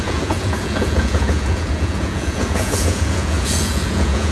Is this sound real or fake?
fake